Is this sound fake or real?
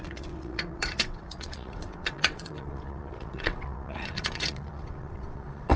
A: fake